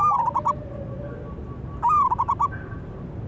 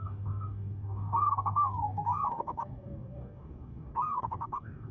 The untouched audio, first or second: first